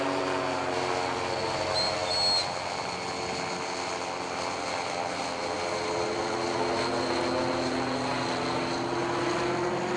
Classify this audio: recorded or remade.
recorded